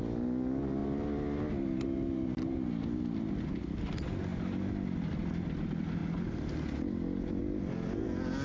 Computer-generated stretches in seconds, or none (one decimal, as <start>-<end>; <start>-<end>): none